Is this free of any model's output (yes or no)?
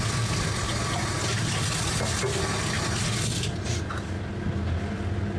yes